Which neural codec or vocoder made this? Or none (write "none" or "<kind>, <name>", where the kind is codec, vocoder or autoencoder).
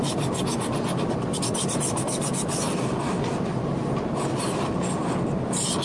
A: none